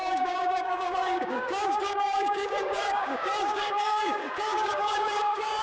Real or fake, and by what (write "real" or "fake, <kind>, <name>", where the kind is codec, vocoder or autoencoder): fake, codec, DAC